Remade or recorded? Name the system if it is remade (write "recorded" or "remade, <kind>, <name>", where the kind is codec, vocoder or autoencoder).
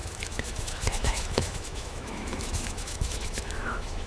remade, autoencoder, DAC-VAE